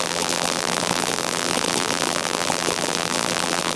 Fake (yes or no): yes